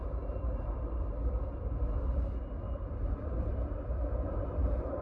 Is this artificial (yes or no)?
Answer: yes